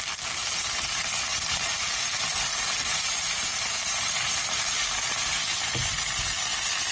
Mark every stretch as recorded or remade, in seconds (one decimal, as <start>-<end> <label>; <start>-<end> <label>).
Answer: 0.0-1.3 recorded; 1.3-5.4 remade; 5.4-6.9 recorded